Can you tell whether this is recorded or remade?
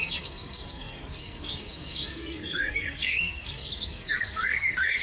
remade